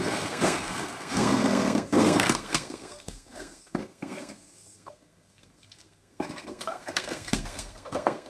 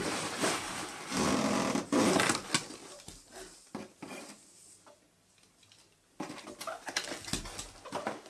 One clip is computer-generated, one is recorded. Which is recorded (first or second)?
second